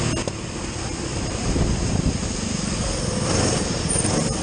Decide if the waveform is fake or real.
real